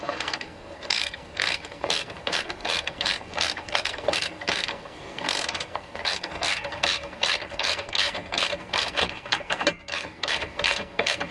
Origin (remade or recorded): remade